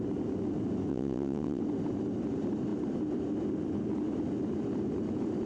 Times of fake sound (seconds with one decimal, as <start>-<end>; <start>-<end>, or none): 0.9-1.6

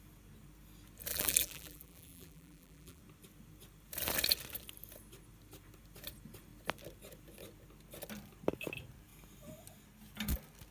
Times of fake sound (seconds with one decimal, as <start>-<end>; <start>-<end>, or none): 1.1-3.0